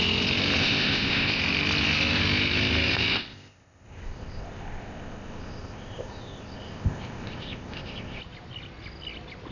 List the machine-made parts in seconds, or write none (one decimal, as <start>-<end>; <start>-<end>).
0.6-1.4; 3.1-8.2